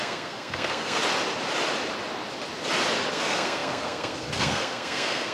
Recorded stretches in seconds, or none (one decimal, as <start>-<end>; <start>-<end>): 1.0-3.1